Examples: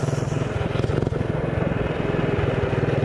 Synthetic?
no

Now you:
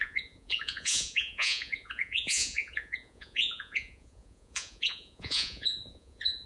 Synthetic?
yes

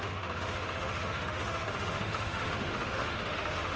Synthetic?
yes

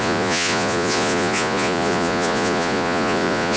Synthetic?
yes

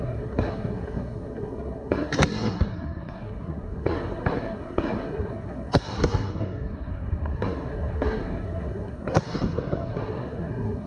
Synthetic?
yes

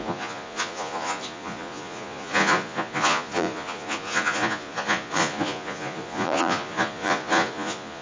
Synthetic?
yes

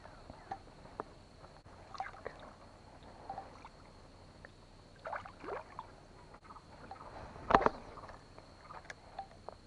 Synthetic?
no